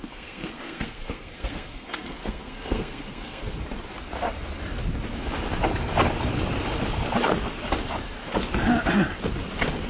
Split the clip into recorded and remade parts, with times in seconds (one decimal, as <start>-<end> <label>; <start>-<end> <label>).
0.0-3.6 remade; 3.6-9.9 recorded